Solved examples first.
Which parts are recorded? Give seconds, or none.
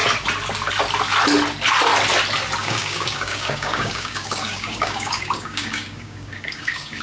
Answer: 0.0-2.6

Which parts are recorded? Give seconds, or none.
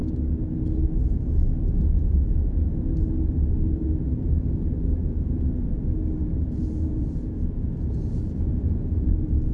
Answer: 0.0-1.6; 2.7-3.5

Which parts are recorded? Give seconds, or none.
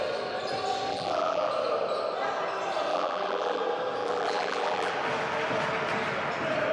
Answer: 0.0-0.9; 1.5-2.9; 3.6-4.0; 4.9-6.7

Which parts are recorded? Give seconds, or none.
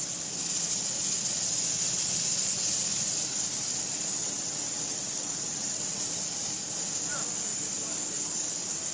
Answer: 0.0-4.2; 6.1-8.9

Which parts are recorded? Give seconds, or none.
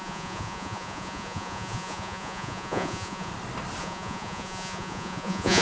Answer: 3.3-3.8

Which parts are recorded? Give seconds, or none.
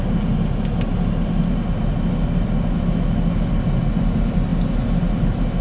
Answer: 0.0-5.6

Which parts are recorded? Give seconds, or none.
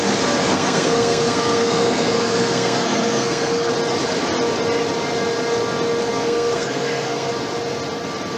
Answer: 0.0-0.4; 3.7-6.1; 7.3-8.4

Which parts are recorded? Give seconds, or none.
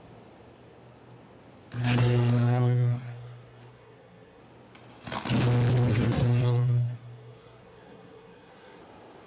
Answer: 0.0-1.8; 4.4-5.9; 8.8-9.3